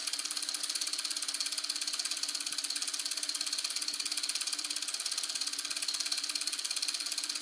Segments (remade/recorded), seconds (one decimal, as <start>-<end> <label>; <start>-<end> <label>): 0.0-0.6 remade; 0.6-7.4 recorded